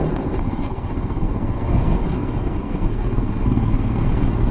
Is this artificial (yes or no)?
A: yes